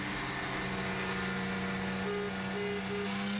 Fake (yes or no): no